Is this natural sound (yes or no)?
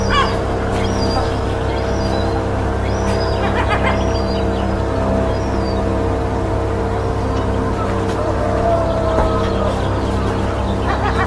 yes